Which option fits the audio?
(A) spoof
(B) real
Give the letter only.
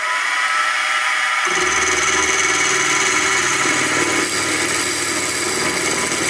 B